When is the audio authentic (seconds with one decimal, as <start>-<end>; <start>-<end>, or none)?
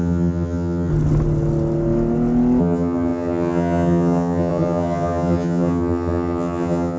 0.9-2.6